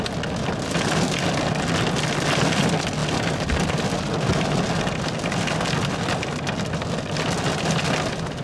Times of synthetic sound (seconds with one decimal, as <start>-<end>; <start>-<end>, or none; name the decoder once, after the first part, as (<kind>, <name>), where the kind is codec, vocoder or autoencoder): none